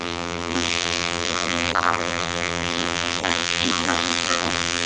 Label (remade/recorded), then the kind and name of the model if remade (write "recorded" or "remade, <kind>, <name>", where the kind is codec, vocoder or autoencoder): remade, vocoder, BigVGAN v2